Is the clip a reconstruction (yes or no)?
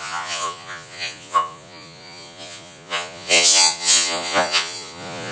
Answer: yes